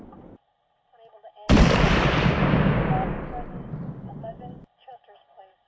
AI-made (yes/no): no